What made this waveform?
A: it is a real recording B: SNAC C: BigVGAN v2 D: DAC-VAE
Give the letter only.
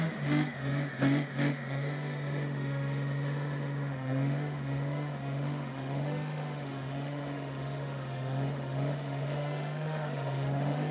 D